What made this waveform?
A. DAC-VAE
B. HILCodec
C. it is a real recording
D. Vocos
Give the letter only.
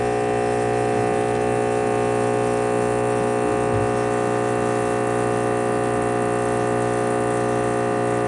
C